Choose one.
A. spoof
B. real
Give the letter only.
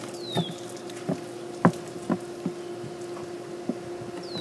B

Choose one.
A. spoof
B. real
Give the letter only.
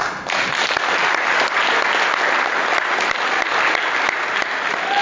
B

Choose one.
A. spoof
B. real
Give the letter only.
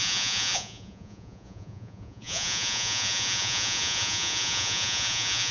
A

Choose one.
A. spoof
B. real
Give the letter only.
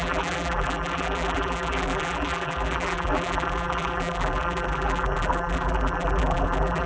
A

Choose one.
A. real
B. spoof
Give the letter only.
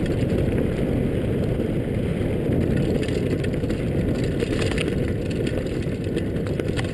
A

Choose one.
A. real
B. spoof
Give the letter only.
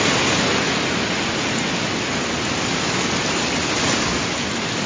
A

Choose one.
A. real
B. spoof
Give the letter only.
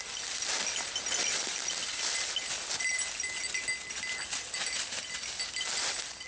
A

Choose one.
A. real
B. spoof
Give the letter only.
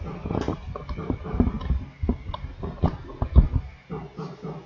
A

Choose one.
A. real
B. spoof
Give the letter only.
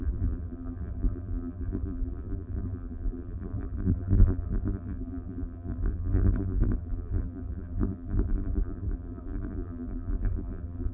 B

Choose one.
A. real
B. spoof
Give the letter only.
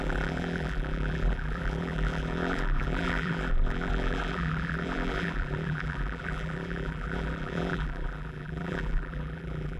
B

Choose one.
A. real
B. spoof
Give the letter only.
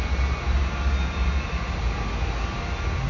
A